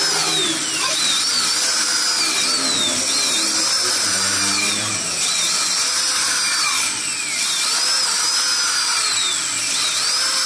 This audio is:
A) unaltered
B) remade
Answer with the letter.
A